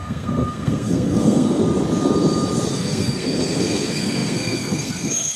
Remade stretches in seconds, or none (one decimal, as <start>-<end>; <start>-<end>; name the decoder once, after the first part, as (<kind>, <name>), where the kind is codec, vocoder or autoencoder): 0.0-1.6 (codec, SNAC); 2.7-5.4